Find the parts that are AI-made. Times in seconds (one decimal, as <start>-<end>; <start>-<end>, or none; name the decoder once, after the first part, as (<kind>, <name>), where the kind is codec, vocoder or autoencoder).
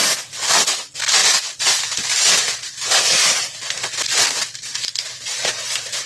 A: 1.2-4.7 (vocoder, BigVGAN v2)